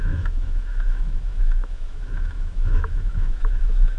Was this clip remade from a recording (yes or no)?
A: yes